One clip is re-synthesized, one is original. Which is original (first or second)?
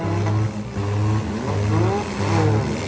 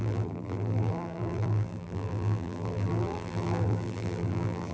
first